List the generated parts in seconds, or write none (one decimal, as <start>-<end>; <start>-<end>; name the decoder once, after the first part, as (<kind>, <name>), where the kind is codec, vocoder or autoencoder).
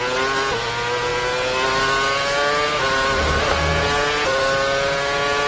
none